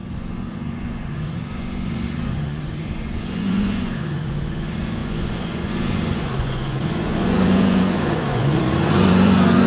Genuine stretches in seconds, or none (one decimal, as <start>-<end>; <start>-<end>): none